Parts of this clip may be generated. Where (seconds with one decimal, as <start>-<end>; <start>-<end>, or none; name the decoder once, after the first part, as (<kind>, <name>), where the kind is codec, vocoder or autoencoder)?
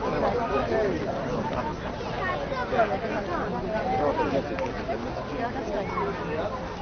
none